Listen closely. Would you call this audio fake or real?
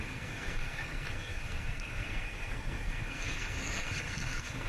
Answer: fake